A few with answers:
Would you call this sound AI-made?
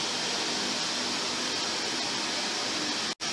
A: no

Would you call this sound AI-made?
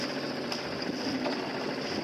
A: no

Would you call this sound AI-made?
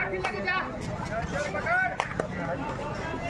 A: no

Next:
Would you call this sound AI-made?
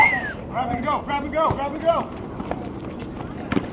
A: yes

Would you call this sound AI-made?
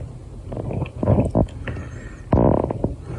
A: no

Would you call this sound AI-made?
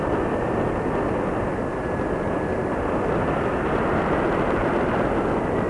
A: no